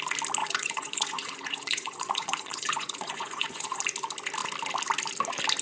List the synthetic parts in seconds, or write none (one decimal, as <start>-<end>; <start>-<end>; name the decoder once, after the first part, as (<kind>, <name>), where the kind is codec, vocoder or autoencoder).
0.4-3.8 (vocoder, Vocos)

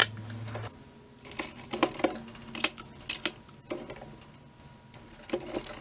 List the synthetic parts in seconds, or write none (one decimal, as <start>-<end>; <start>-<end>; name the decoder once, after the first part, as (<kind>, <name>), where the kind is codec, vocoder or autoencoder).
none

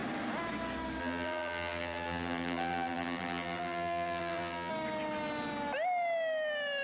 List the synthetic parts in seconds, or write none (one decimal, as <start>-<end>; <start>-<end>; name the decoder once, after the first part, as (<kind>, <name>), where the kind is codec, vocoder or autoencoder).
1.0-4.7 (vocoder, BigVGAN v2)